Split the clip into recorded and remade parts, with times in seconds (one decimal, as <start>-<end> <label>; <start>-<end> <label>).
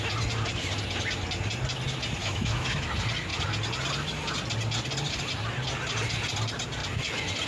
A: 0.0-2.2 recorded; 2.2-2.9 remade; 2.9-7.5 recorded